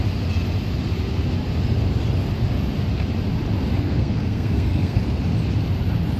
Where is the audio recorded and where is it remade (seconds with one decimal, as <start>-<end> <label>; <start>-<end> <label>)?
0.0-3.7 recorded; 3.7-5.0 remade; 5.0-6.2 recorded